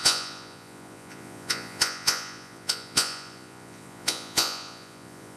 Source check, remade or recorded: remade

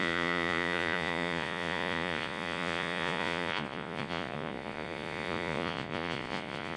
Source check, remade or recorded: remade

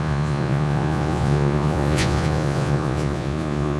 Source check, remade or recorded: remade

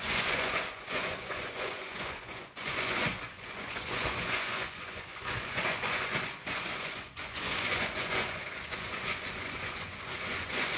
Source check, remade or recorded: remade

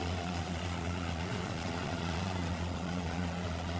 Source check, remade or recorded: remade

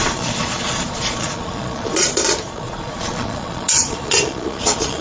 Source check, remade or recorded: remade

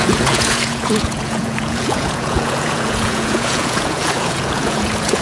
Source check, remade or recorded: remade